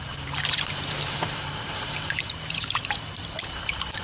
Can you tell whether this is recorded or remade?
remade